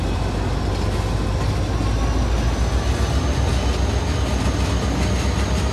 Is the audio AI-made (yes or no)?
no